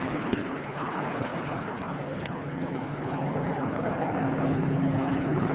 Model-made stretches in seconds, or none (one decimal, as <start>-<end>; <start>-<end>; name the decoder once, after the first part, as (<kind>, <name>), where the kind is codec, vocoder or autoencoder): 0.0-5.5 (codec, HILCodec)